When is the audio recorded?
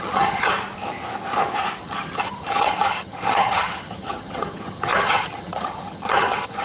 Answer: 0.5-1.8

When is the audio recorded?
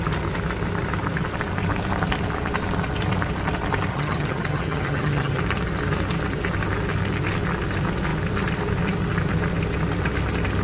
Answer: 0.0-3.9; 5.4-10.6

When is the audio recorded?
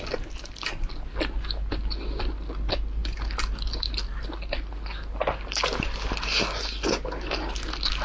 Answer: 0.0-8.0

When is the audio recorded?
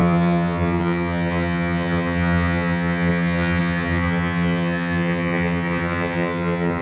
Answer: none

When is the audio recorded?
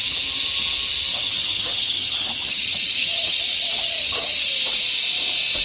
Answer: 0.0-1.1; 4.5-5.6